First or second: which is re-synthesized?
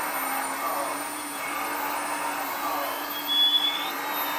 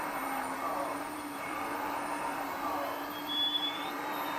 second